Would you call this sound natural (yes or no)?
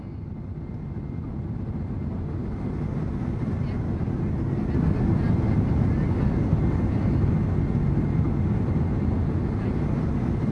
yes